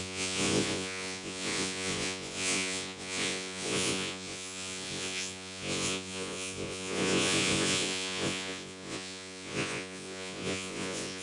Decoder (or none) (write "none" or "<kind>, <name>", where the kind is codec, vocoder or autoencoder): vocoder, Vocos